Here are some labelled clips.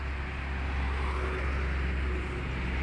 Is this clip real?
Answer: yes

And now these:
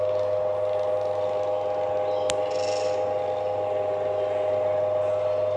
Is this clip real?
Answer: yes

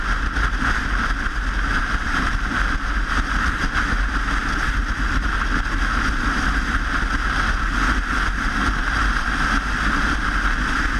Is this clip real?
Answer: yes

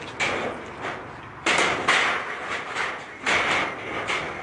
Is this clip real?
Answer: yes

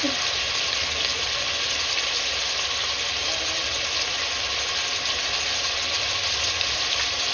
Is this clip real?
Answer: yes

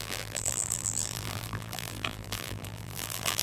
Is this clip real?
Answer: no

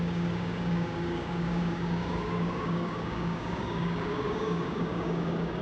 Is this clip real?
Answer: no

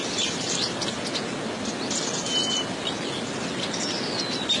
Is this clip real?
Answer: yes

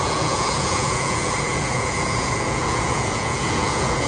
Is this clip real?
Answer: no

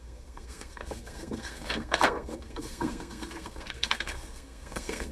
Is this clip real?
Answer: no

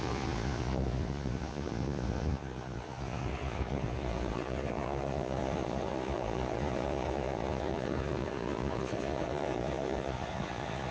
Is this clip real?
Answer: no